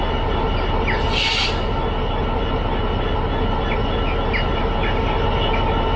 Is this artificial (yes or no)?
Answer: no